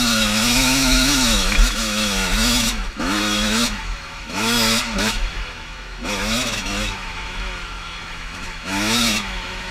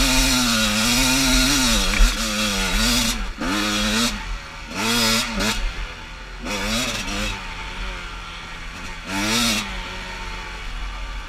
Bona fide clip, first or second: second